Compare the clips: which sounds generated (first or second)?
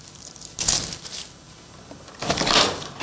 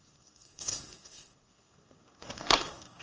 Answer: second